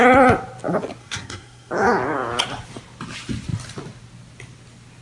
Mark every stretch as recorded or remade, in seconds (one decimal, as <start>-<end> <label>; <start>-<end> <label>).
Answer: 0.0-1.0 recorded; 1.0-1.7 remade; 1.7-5.0 recorded